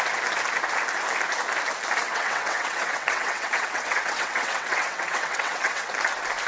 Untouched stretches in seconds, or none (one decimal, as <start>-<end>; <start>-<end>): 0.0-2.0; 5.9-6.5